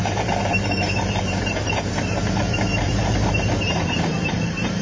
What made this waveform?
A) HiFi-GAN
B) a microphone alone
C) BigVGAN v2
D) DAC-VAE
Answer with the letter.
C